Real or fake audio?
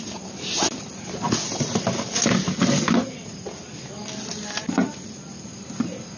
real